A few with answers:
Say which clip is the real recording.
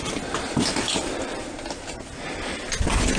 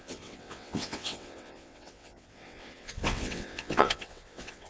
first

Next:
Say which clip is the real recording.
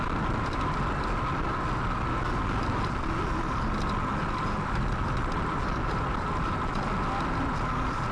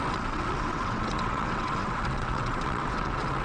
first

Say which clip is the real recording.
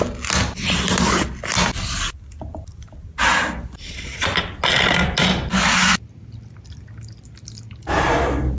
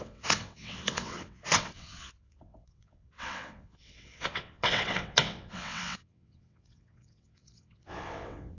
first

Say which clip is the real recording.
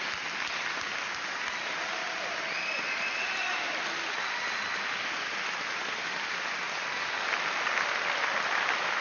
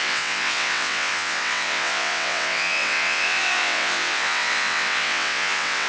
first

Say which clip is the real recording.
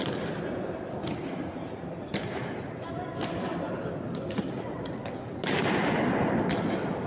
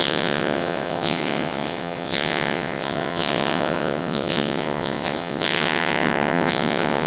first